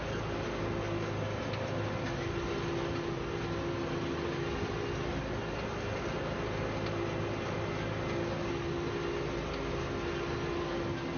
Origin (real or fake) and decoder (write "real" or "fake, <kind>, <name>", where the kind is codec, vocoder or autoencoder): real